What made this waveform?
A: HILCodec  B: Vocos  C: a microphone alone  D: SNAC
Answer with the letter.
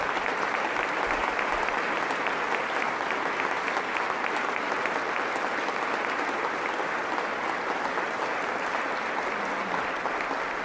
C